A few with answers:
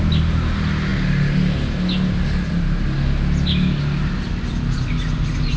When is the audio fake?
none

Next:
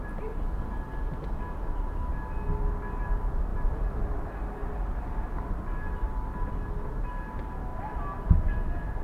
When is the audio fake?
3.5-4.7 (vocoder, BigVGAN v2); 7.7-9.0

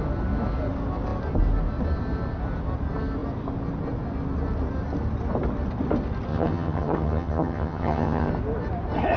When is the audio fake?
6.3-8.3 (vocoder, HiFi-GAN)

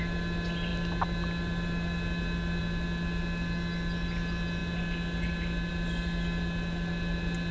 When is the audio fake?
none

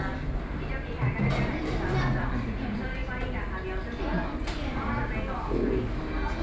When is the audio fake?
none

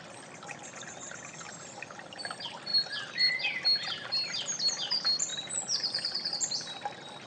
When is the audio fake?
none

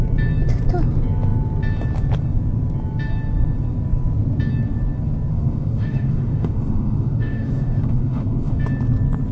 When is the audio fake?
5.3-8.6 (autoencoder, DAC-VAE)